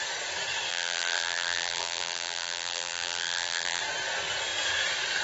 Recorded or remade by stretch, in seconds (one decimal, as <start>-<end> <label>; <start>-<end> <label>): 0.0-0.7 recorded; 0.7-3.8 remade; 3.8-5.2 recorded